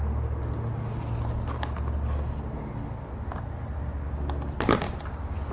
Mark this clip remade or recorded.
recorded